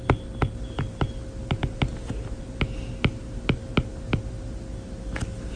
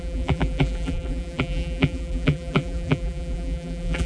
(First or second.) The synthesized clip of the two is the second